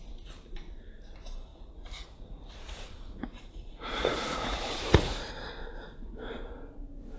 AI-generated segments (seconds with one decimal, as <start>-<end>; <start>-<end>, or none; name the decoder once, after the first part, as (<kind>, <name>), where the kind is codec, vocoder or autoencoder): 1.5-5.3 (vocoder, Vocos)